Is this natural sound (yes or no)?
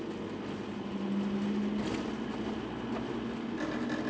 yes